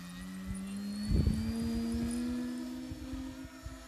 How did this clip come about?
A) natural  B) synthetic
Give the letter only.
A